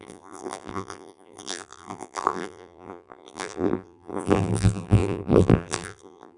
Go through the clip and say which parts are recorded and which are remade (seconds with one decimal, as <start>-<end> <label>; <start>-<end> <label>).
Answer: 0.0-6.4 remade